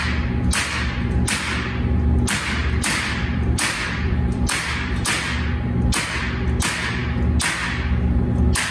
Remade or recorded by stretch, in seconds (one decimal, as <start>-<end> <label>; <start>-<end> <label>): 0.0-2.6 recorded; 2.6-5.5 remade; 5.5-8.7 recorded

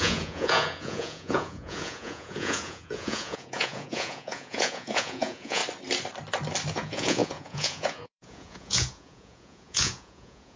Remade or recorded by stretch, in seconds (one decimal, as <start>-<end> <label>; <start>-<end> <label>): 0.0-5.6 remade; 5.6-6.7 recorded; 6.7-10.6 remade

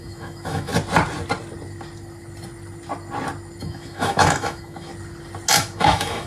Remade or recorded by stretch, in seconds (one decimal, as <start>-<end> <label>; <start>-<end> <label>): 0.0-0.7 remade; 0.7-3.6 recorded; 3.6-4.9 remade; 4.9-5.5 recorded; 5.5-6.3 remade